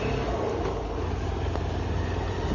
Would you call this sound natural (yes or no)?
yes